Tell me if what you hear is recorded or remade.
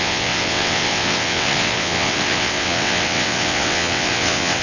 remade